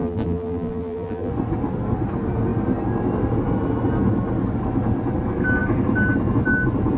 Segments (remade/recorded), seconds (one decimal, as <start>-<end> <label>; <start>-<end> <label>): 0.0-1.3 remade; 1.3-7.0 recorded